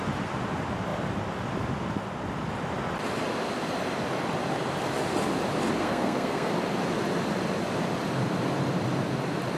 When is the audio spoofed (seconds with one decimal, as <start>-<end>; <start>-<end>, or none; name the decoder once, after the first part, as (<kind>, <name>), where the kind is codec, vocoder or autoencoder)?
5.8-6.5 (codec, SNAC)